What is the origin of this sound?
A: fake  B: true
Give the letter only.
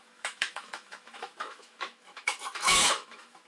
A